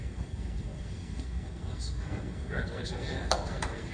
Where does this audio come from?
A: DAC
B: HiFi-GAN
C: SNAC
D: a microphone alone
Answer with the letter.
C